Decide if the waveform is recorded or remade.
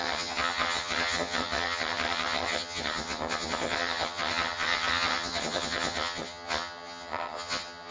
remade